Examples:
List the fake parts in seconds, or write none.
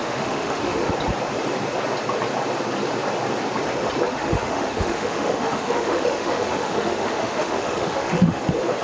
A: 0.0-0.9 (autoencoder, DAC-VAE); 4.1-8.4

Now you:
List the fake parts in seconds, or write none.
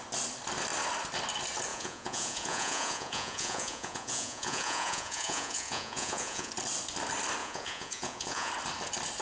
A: 1.7-6.5 (vocoder, Vocos); 7.4-8.5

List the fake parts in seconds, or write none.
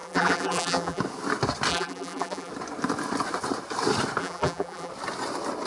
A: 0.0-1.0 (vocoder, BigVGAN v2); 1.7-2.5; 4.2-4.9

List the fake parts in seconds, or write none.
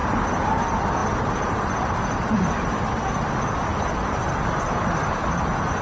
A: 0.0-0.6 (vocoder, BigVGAN v2); 1.0-3.3; 3.7-4.5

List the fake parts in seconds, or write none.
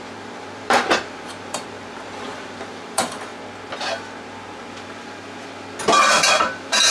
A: 0.0-3.3 (vocoder, BigVGAN v2); 6.3-6.9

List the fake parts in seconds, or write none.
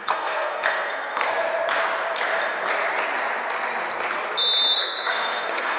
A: 0.0-1.3 (codec, SNAC); 4.8-5.8